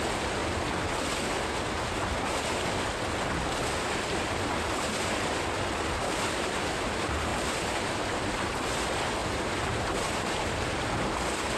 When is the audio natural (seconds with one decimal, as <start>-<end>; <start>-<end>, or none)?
0.0-7.3; 8.2-9.2; 10.8-11.6